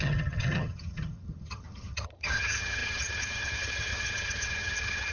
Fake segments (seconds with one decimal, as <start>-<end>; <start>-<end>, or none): 0.0-5.1